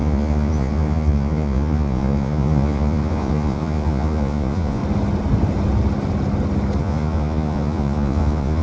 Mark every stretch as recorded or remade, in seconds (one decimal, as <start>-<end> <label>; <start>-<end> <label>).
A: 0.0-4.8 remade; 4.8-6.8 recorded; 6.8-8.6 remade